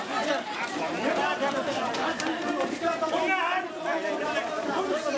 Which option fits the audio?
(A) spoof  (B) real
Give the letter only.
B